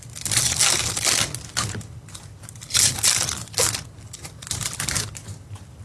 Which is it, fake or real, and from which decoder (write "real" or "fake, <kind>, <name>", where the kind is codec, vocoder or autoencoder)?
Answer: real